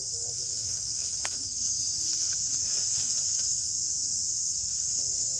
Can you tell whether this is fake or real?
fake